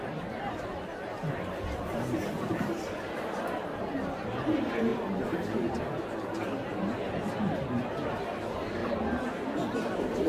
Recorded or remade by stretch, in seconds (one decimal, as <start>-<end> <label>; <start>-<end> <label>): 0.0-8.8 remade; 8.8-10.3 recorded